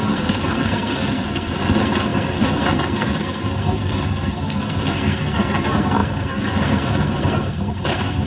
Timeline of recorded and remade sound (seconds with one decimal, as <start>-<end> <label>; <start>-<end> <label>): 0.0-8.3 remade